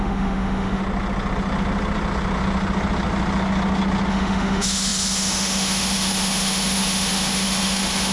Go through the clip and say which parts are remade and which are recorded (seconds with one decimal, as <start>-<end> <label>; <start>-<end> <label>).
0.0-0.8 remade; 0.8-4.1 recorded; 4.1-8.1 remade